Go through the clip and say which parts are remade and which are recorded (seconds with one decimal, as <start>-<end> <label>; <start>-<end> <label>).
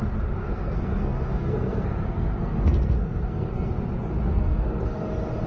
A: 0.0-0.4 recorded; 0.4-3.7 remade; 3.7-4.3 recorded; 4.3-5.1 remade; 5.1-5.5 recorded